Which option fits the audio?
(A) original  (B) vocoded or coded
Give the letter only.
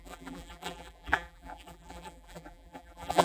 B